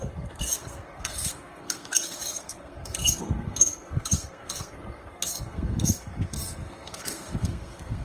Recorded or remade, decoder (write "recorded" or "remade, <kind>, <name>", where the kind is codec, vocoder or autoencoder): remade, codec, SNAC